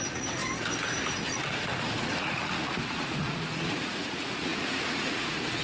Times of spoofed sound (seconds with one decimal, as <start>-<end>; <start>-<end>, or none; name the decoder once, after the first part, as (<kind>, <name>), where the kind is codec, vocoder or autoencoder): 0.0-0.4 (vocoder, Vocos); 1.1-5.6